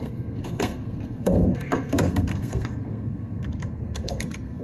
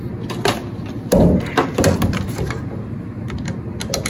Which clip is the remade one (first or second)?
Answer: first